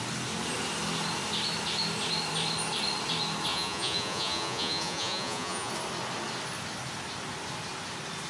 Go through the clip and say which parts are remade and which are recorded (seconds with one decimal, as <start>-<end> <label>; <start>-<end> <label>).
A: 0.0-3.5 recorded; 3.5-5.7 remade; 5.7-8.3 recorded